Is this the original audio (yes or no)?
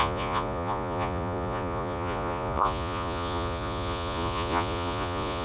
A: no